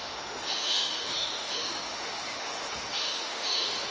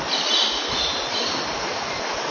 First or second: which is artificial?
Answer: first